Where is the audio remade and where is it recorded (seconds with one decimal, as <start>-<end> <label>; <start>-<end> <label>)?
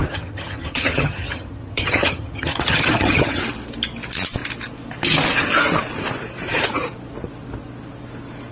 0.0-3.4 remade; 3.4-8.5 recorded